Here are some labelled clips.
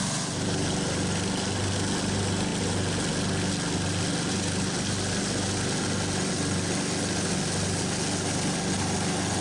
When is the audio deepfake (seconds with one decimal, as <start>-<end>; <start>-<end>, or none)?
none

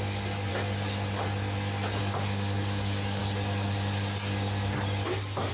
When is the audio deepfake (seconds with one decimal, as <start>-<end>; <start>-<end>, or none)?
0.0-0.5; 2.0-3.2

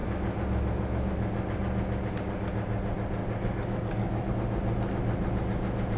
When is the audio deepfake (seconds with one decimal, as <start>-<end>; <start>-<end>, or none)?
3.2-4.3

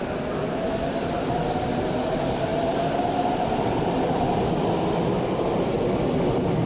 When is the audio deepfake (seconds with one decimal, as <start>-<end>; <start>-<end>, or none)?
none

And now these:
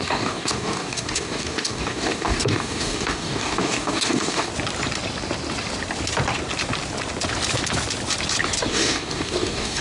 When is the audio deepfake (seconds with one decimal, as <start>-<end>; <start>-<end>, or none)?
0.0-4.5; 8.7-9.8

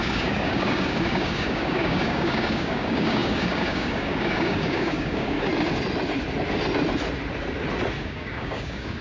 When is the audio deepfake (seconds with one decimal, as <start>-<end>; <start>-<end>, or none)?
0.0-5.5; 8.0-9.0

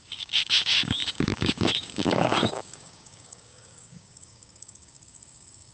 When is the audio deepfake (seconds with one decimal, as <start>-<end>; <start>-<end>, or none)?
0.0-5.7